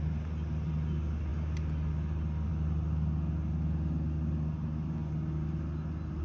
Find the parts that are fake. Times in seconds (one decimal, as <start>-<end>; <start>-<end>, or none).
none